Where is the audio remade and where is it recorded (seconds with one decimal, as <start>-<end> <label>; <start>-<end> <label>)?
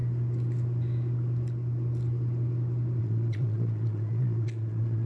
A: 0.0-3.0 recorded; 3.0-5.1 remade